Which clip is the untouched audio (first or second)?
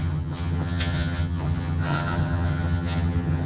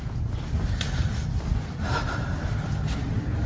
second